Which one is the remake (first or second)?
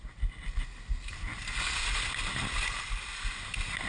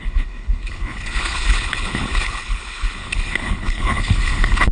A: second